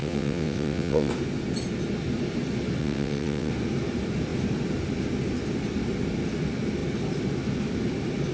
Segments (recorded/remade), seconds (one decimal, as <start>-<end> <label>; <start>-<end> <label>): 0.0-1.1 remade; 1.1-2.8 recorded; 2.8-3.5 remade; 3.5-8.3 recorded